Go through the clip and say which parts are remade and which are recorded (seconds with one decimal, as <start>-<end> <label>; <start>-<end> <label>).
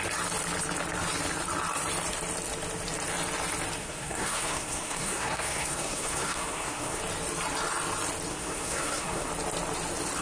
0.0-3.8 recorded; 3.8-7.0 remade; 7.0-8.3 recorded; 8.3-9.3 remade; 9.3-10.2 recorded